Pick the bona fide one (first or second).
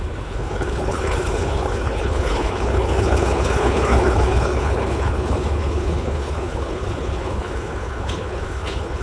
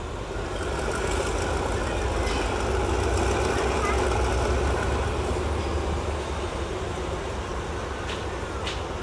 second